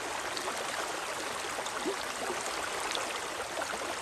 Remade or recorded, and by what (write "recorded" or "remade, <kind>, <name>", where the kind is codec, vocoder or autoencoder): recorded